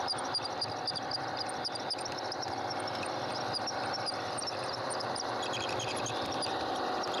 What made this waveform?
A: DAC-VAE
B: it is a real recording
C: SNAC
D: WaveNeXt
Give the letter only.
B